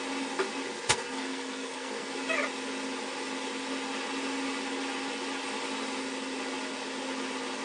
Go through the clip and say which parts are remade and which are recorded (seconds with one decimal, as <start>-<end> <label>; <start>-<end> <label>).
0.0-0.9 recorded; 0.9-2.1 remade; 2.1-7.6 recorded